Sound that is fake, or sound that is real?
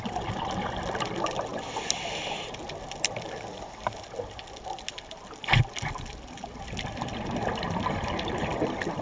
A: real